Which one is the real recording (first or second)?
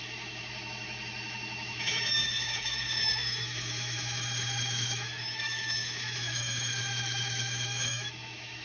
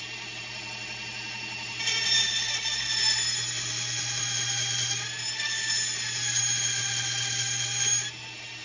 second